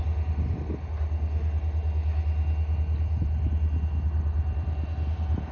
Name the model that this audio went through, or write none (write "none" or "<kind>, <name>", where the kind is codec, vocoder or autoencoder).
none